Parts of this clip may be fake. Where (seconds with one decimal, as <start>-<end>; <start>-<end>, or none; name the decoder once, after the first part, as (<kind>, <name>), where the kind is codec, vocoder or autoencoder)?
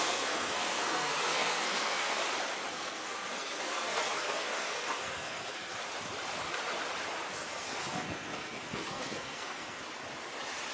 0.0-2.2 (codec, SNAC); 2.7-5.8; 7.3-9.8